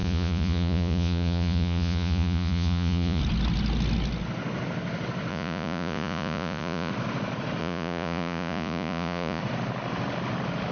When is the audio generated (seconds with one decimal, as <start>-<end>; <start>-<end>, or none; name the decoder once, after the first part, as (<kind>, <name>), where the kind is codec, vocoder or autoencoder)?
0.0-3.2 (vocoder, Vocos); 5.3-6.9; 7.6-9.4